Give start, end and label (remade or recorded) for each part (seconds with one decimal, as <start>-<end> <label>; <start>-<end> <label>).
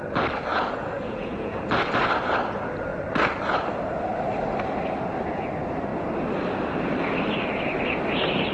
0.0-0.5 recorded; 0.5-1.6 remade; 1.6-8.5 recorded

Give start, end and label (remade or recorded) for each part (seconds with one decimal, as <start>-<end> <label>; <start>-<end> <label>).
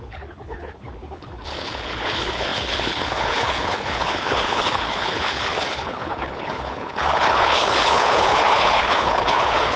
0.0-9.8 remade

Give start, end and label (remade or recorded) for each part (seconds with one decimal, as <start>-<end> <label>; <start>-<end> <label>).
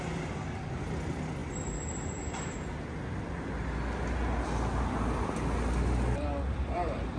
0.0-7.2 recorded